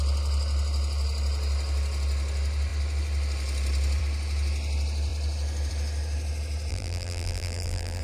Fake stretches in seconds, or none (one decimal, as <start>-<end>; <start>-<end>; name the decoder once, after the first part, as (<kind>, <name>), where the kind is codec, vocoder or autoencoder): 6.7-8.0 (vocoder, BigVGAN v2)